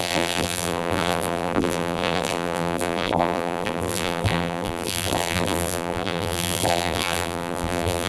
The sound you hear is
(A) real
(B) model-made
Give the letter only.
B